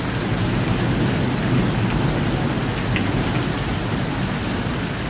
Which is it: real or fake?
real